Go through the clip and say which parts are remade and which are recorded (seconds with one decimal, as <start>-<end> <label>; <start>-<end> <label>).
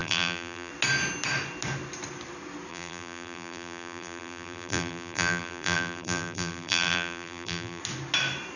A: 0.0-0.7 remade; 0.7-2.7 recorded; 2.7-7.8 remade; 7.8-8.6 recorded